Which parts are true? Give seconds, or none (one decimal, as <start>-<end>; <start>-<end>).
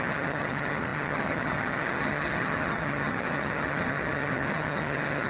none